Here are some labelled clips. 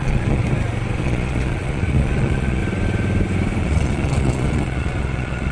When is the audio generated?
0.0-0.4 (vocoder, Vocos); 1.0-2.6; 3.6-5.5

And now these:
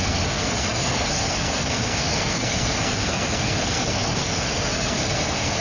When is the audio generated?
0.0-5.6 (codec, SNAC)

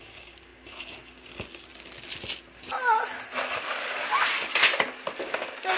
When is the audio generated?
0.0-1.7 (codec, DAC); 5.2-5.8